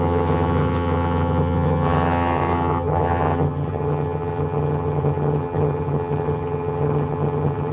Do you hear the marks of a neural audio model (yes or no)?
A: yes